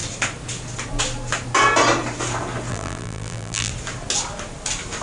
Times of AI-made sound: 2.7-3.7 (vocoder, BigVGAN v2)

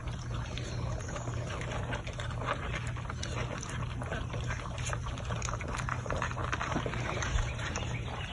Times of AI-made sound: 4.3-6.4 (vocoder, BigVGAN v2); 7.1-8.3

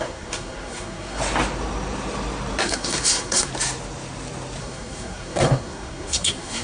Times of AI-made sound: 0.0-1.2 (codec, SNAC); 2.6-3.5; 4.6-6.6

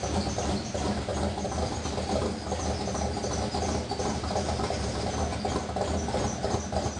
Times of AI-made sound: 0.0-1.1 (vocoder, BigVGAN v2); 4.0-5.3; 6.2-7.0

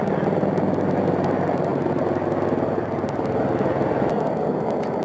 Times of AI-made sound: none